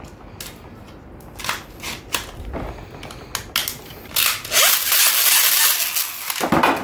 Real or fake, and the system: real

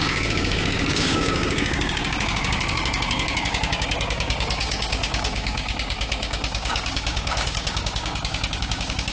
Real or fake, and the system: fake, codec, DAC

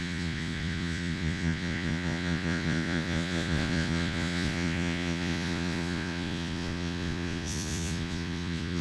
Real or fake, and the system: fake, vocoder, Vocos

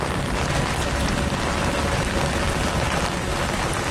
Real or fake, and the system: fake, vocoder, BigVGAN v2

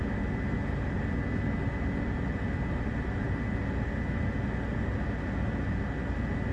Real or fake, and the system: real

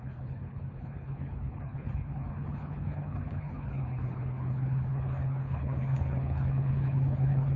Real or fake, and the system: fake, codec, HILCodec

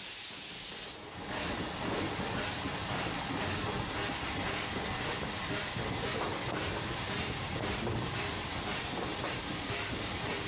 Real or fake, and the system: real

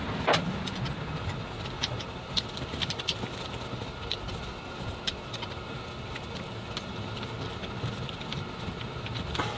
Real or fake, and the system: real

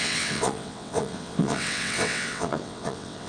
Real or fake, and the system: fake, vocoder, WaveNeXt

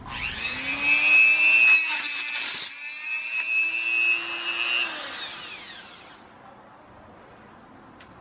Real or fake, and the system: real